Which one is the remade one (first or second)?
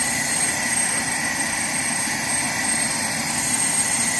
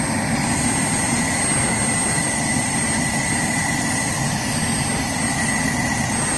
first